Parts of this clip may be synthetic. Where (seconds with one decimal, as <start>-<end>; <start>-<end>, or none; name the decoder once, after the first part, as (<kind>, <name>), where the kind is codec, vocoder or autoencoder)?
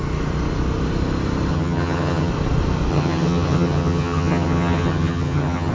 1.5-2.3 (vocoder, HiFi-GAN); 2.9-5.7